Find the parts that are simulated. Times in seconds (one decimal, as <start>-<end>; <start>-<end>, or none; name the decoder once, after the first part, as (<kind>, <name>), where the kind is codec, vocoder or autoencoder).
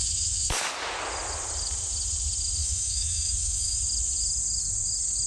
0.0-0.7 (autoencoder, DAC-VAE); 2.6-3.8